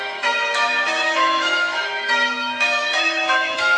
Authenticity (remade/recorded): remade